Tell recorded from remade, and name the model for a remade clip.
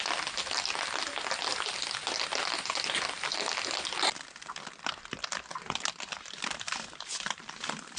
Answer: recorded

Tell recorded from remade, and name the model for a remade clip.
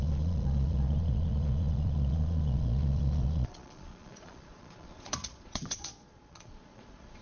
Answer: remade, vocoder, Vocos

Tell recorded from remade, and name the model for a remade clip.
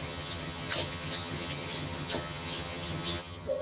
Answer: remade, vocoder, HiFi-GAN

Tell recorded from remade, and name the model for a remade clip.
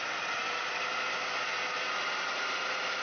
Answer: recorded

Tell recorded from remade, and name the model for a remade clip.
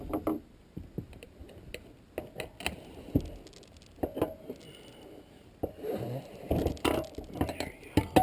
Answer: recorded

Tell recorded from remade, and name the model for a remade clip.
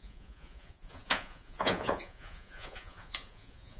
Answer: remade, vocoder, Vocos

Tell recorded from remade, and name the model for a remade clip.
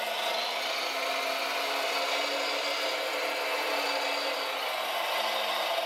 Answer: recorded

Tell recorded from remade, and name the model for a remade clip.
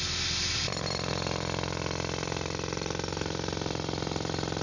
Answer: remade, vocoder, BigVGAN v2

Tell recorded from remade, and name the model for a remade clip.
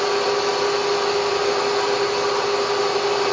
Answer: recorded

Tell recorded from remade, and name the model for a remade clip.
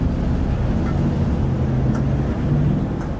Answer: recorded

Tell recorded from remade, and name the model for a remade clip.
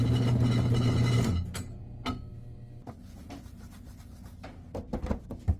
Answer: recorded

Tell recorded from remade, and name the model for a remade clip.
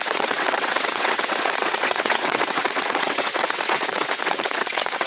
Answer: remade, vocoder, WaveNeXt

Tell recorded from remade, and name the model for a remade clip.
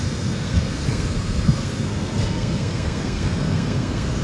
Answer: remade, codec, SNAC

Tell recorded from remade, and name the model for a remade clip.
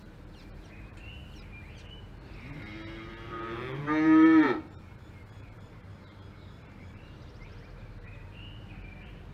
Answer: remade, vocoder, BigVGAN v2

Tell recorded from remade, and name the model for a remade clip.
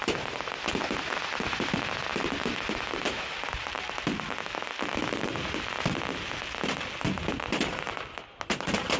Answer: recorded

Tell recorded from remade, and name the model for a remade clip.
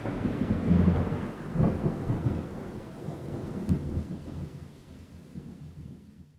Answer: remade, codec, SNAC